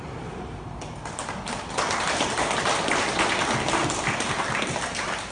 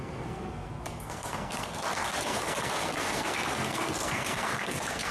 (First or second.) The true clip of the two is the first